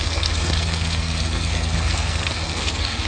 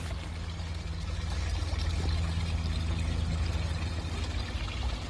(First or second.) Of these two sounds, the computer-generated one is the first